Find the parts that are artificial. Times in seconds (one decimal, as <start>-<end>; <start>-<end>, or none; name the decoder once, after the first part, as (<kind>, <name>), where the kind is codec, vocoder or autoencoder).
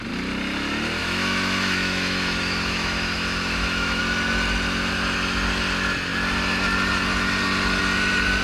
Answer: 1.0-4.0 (autoencoder, DAC-VAE)